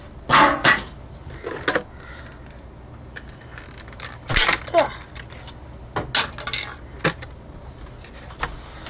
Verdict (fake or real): real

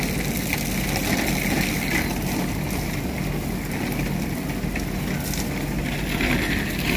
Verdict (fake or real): real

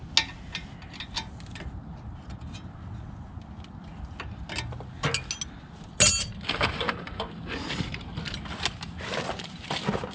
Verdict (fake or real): real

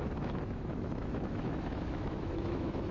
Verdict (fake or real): fake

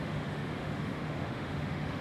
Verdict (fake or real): fake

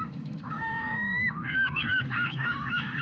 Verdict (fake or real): fake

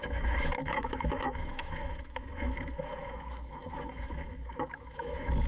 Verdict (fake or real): fake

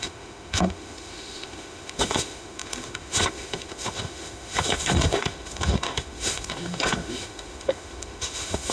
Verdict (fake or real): fake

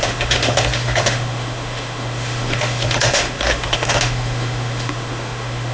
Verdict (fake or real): fake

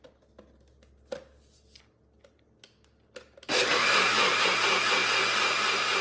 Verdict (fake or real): real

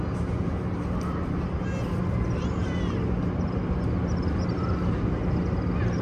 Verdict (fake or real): real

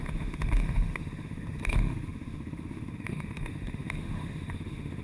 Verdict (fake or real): fake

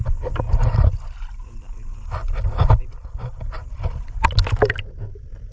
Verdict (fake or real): real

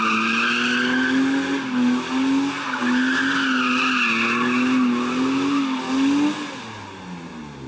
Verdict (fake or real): real